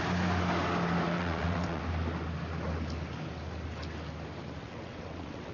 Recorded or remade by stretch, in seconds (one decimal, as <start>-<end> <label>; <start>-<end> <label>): 0.0-1.1 recorded; 1.1-1.8 remade; 1.8-4.6 recorded; 4.6-5.5 remade